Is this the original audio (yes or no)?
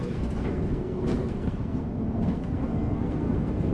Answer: no